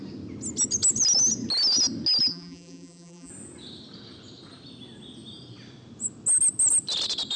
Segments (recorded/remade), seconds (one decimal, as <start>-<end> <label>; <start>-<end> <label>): 0.0-2.3 recorded; 2.3-3.3 remade; 3.3-7.4 recorded

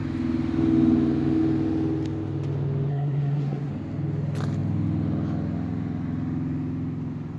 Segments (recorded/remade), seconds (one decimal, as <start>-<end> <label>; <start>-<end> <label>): 0.0-2.9 recorded; 2.9-3.7 remade; 3.7-7.4 recorded

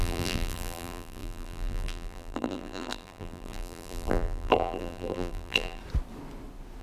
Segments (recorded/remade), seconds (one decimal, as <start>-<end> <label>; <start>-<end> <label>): 0.0-5.8 remade; 5.8-6.8 recorded

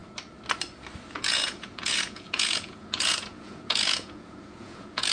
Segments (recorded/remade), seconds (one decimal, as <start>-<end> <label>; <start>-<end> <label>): 0.0-1.1 recorded; 1.1-5.1 remade

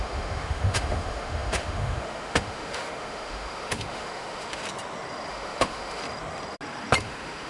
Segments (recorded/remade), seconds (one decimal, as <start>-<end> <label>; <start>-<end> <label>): 0.0-4.6 remade; 4.6-5.3 recorded; 5.3-6.0 remade; 6.0-7.0 recorded; 7.0-7.5 remade